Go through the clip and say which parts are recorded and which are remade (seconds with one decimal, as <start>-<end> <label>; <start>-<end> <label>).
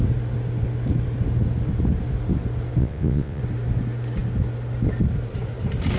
0.0-2.8 recorded; 2.8-3.4 remade; 3.4-6.0 recorded